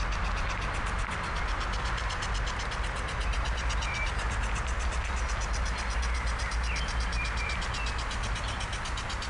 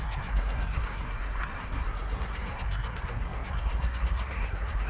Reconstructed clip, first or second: second